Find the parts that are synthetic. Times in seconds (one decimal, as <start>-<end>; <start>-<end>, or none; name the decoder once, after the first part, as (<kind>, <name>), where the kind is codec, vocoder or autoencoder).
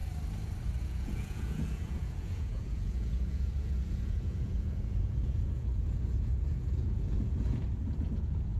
0.8-8.6 (vocoder, Vocos)